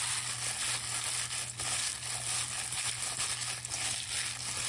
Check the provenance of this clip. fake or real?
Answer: real